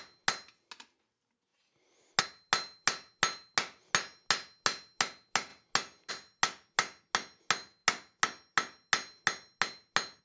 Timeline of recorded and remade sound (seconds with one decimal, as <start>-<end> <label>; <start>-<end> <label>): 0.0-10.2 recorded

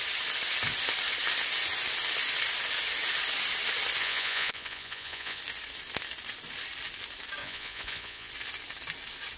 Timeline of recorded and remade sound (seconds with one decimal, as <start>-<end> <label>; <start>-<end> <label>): 0.0-4.0 recorded; 4.0-5.4 remade; 5.4-7.4 recorded; 7.4-8.3 remade; 8.3-9.4 recorded

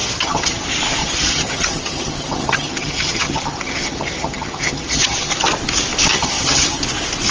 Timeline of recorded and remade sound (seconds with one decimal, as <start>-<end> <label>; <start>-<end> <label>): 0.0-0.6 remade; 0.6-1.0 recorded; 1.0-5.3 remade; 5.3-6.1 recorded; 6.1-6.8 remade; 6.8-7.3 recorded